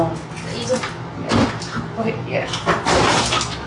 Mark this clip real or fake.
real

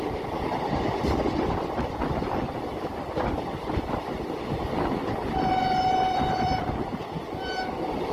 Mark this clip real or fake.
fake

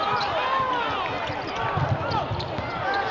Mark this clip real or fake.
real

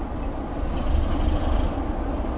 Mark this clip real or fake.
real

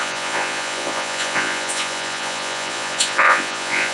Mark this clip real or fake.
fake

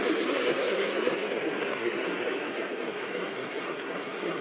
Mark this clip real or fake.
fake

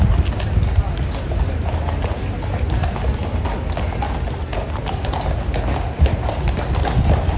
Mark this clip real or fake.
real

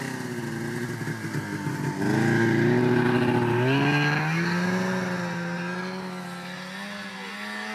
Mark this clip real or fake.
real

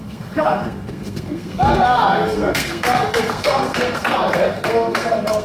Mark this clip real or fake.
fake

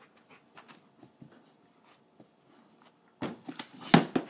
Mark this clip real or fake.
real